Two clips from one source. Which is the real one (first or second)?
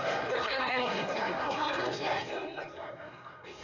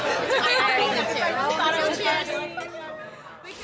second